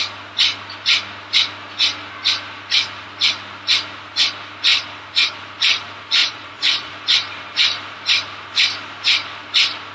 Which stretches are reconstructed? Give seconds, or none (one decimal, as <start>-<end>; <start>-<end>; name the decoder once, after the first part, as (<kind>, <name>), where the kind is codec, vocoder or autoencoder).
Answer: 6.2-6.9 (vocoder, Vocos)